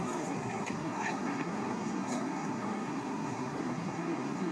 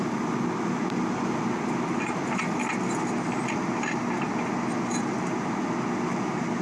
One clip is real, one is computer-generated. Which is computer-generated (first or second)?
first